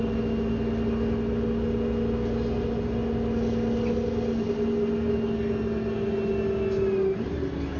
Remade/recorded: recorded